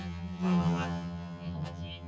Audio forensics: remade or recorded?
remade